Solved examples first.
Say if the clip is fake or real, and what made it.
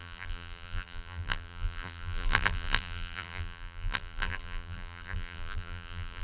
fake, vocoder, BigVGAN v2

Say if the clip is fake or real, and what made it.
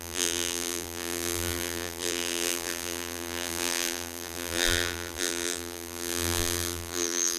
fake, vocoder, BigVGAN v2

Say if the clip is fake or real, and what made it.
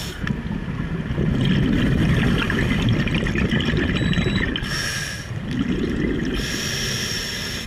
real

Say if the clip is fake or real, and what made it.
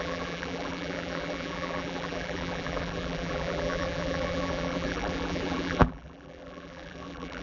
fake, vocoder, BigVGAN v2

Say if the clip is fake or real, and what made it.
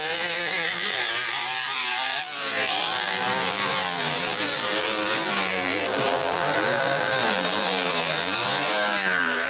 fake, vocoder, BigVGAN v2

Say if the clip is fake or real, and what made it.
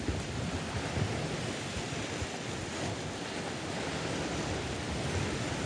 real